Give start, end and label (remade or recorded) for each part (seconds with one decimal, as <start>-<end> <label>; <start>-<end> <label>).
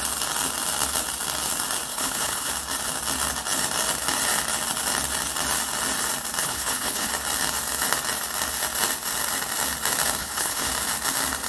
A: 0.0-1.9 recorded; 1.9-2.5 remade; 2.5-6.4 recorded; 6.4-7.1 remade; 7.1-10.2 recorded; 10.2-10.7 remade; 10.7-11.5 recorded